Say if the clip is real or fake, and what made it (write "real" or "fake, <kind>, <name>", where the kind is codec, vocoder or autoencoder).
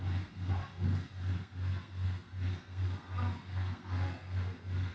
fake, codec, SNAC